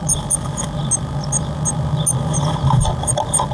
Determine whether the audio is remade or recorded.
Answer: recorded